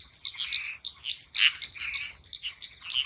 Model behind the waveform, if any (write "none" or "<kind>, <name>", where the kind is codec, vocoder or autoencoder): none